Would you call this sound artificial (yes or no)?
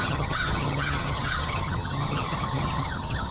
yes